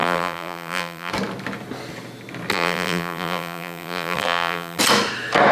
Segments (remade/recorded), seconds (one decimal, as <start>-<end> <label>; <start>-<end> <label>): 0.0-1.1 remade; 1.1-2.5 recorded; 2.5-4.8 remade; 4.8-5.5 recorded